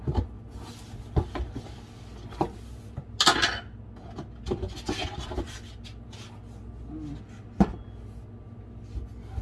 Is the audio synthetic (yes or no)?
no